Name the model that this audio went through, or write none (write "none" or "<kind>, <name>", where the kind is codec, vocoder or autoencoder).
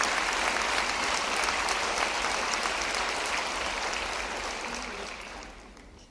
none